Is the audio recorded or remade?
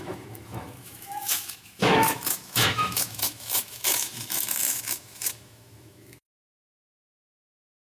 remade